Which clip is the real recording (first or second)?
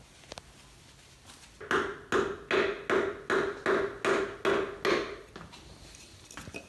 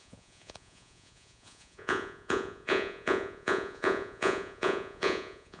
first